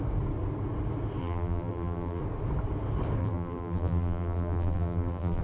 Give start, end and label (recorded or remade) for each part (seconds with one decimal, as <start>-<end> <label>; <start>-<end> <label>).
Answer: 0.0-1.2 recorded; 1.2-2.2 remade; 2.2-3.2 recorded; 3.2-5.4 remade